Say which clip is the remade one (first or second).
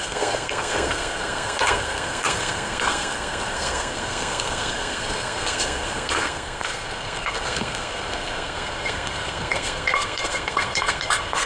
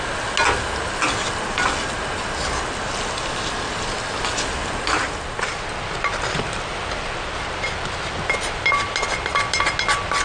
first